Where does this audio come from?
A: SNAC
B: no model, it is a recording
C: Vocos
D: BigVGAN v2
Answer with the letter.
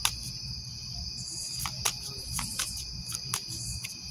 B